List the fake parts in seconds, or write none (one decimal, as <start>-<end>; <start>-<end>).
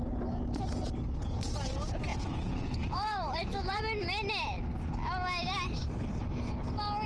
2.1-3.8